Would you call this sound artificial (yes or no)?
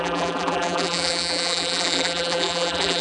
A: yes